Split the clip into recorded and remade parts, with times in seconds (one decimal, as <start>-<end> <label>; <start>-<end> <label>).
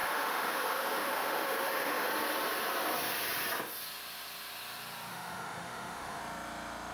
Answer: 0.0-2.1 remade; 2.1-5.1 recorded; 5.1-6.2 remade; 6.2-6.9 recorded